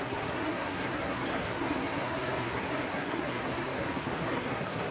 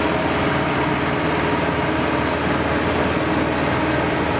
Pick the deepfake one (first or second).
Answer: first